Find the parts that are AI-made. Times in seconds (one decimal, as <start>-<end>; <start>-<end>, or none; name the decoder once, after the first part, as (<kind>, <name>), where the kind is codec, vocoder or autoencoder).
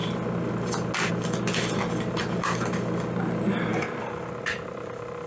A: none